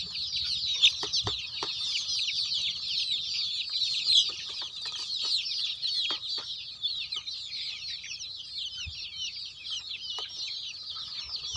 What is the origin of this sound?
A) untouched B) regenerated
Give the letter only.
A